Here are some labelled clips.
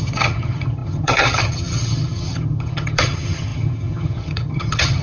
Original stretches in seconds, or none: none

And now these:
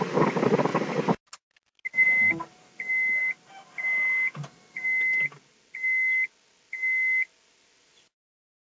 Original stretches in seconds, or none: 0.0-8.7